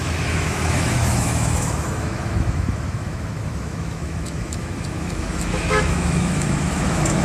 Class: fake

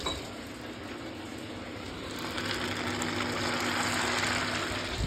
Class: real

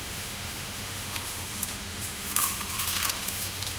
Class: fake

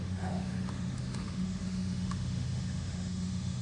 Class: fake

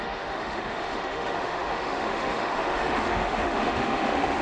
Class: fake